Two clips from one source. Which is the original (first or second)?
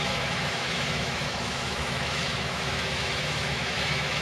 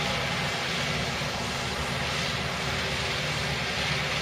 second